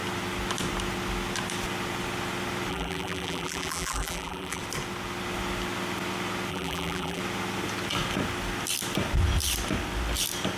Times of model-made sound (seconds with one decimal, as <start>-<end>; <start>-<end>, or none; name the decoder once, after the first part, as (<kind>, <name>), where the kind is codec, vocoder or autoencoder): 2.7-4.6 (vocoder, BigVGAN v2); 6.5-7.2

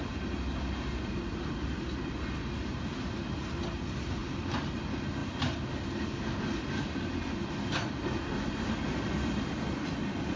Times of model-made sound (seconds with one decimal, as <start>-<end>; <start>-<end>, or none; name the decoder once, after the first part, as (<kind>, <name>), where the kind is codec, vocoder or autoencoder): 4.2-4.7 (vocoder, BigVGAN v2)

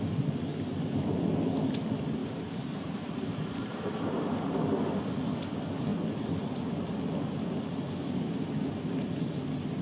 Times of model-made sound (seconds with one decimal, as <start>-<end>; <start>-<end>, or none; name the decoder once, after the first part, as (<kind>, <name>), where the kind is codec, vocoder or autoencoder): 2.2-4.6 (vocoder, BigVGAN v2)

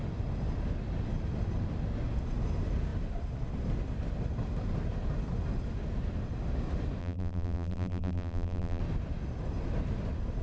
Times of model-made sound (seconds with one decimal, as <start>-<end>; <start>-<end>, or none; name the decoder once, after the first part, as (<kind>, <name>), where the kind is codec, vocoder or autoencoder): 7.0-8.8 (vocoder, BigVGAN v2)